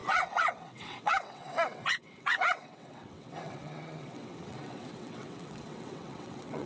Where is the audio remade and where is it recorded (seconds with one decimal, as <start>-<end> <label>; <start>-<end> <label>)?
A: 0.0-6.7 remade